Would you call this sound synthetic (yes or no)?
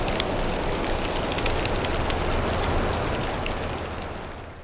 no